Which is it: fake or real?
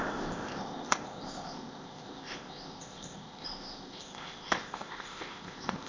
fake